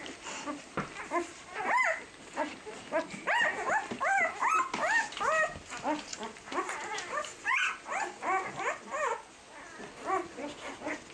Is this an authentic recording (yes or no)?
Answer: yes